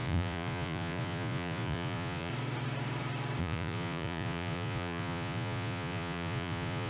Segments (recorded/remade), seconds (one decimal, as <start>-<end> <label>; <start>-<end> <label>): 0.0-2.3 remade; 2.3-3.4 recorded; 3.4-6.9 remade